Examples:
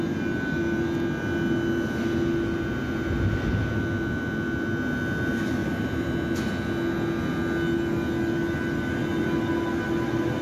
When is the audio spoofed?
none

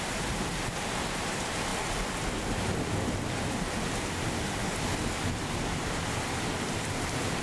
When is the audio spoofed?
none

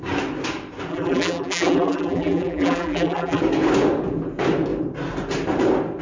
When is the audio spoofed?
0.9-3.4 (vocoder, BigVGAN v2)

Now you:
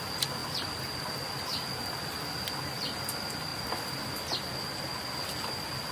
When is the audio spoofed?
0.4-1.1 (vocoder, BigVGAN v2); 3.5-4.5

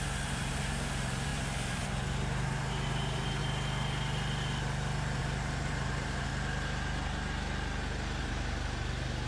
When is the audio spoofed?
0.0-3.4 (vocoder, BigVGAN v2); 5.2-6.3; 8.2-9.3

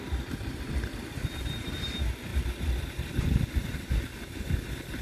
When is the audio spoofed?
none

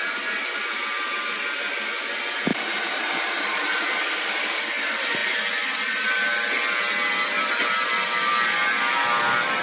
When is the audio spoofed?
2.5-4.0 (vocoder, BigVGAN v2)

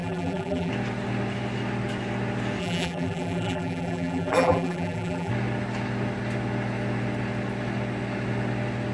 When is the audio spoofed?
0.0-0.7 (vocoder, BigVGAN v2); 2.6-5.3